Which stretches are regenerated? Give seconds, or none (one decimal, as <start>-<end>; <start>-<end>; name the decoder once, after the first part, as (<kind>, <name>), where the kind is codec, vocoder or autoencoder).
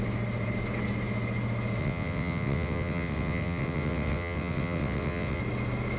1.8-5.4 (vocoder, WaveNeXt)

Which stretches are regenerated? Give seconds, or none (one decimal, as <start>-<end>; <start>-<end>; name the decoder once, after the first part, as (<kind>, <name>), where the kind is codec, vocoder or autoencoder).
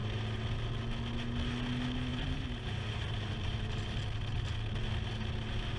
2.1-3.8 (vocoder, BigVGAN v2)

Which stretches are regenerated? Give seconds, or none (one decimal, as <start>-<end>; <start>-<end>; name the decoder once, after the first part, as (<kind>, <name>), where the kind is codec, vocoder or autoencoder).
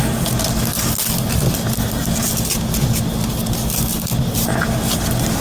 0.7-2.5 (vocoder, BigVGAN v2); 3.9-4.5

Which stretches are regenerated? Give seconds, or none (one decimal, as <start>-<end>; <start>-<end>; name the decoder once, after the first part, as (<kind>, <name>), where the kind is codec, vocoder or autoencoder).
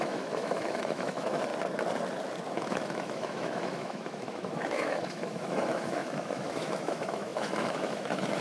0.0-1.5 (autoencoder, DAC-VAE); 2.5-8.4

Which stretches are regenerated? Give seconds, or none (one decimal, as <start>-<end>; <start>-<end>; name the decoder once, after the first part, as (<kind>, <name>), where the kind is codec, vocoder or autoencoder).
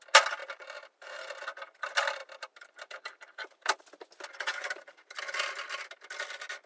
0.4-1.4 (vocoder, BigVGAN v2); 2.2-3.8; 4.5-5.2